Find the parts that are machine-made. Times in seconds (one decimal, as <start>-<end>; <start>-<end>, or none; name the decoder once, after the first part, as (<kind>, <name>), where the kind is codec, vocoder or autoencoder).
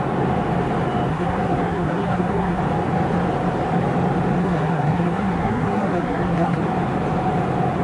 1.1-2.6 (codec, SNAC); 4.4-6.6